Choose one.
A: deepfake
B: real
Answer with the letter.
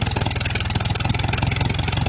B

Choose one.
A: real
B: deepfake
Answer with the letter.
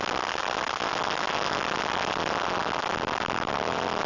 A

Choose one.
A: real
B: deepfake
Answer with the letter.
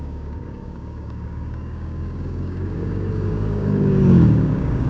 B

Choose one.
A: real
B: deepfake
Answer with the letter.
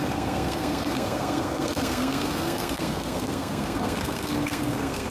B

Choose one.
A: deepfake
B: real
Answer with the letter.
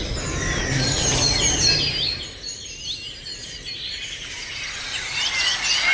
B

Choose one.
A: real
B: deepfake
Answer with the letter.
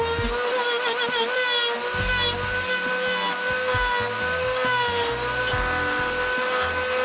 A